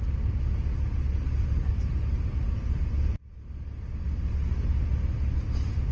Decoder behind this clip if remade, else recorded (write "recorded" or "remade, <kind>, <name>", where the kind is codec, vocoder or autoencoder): recorded